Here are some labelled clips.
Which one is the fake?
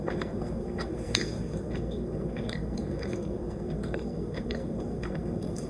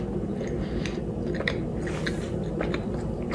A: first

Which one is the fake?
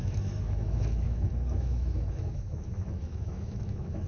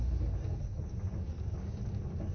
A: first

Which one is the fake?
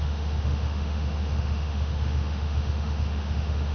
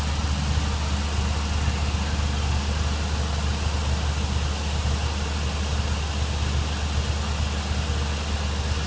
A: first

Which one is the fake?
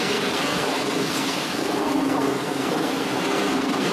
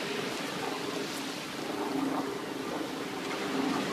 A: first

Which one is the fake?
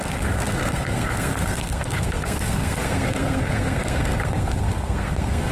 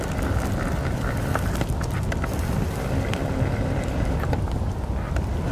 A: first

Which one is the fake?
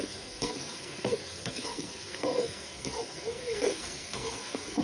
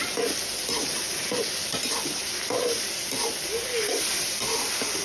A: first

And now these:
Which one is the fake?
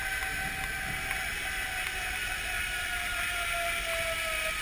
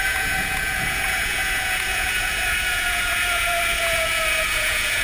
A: second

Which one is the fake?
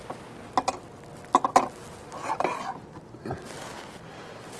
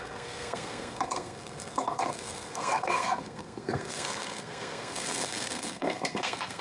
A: second